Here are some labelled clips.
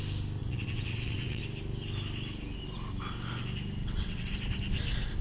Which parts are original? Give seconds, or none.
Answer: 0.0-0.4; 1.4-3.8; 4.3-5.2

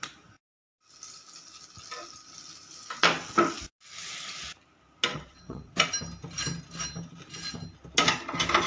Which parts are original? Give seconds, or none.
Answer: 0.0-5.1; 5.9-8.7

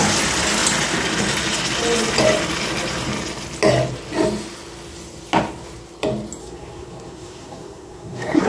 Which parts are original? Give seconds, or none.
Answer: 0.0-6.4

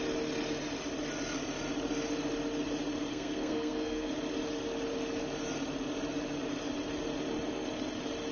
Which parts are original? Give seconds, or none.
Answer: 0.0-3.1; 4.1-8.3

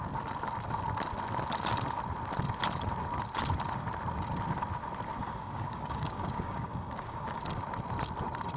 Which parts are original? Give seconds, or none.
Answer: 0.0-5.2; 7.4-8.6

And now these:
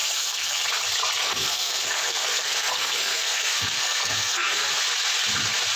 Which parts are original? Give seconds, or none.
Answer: 0.6-1.2; 4.7-5.8

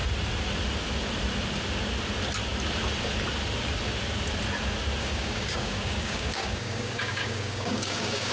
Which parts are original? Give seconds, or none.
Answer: 0.0-5.0